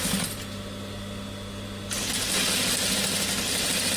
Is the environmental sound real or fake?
real